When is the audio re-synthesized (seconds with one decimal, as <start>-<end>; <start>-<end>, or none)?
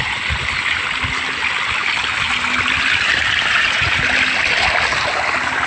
3.5-4.0